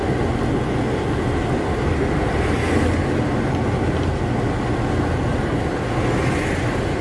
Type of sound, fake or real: real